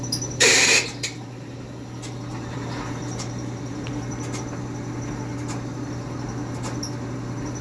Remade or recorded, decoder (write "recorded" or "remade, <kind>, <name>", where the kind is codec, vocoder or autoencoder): recorded